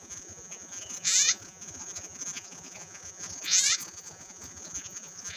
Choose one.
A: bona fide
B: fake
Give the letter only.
B